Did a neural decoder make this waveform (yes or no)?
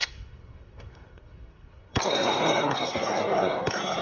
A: yes